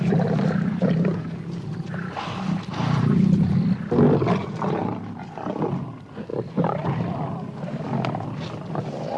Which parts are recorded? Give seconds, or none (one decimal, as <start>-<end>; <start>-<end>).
0.0-9.2